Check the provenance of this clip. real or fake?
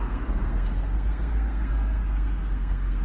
fake